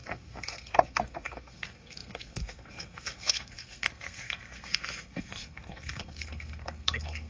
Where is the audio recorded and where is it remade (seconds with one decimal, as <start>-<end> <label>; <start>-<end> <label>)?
0.0-7.3 remade